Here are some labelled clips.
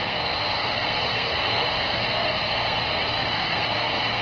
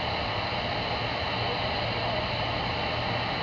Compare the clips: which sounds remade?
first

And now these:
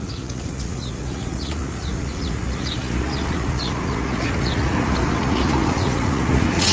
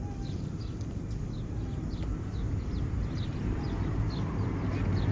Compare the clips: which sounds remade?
first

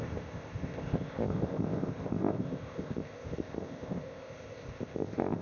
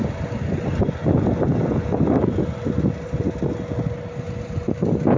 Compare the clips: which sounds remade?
first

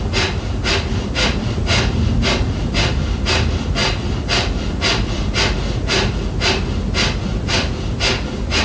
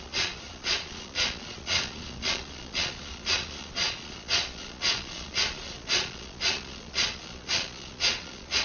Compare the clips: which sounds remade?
second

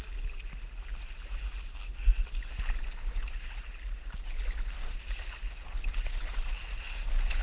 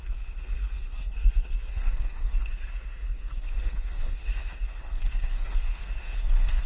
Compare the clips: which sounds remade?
second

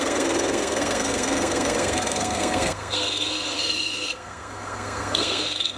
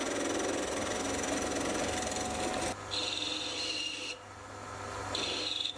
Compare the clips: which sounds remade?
first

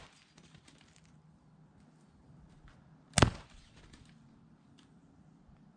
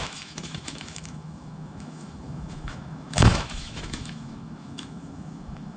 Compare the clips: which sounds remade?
second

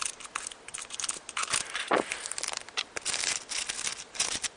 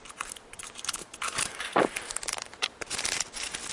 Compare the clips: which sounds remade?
second